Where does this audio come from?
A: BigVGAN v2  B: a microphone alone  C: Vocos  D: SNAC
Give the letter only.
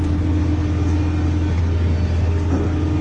B